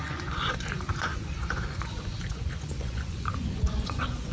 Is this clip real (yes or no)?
no